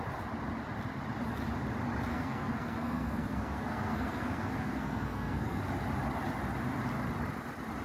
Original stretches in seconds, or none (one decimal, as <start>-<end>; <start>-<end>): 0.0-2.1; 5.6-7.8